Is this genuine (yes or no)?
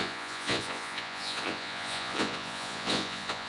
no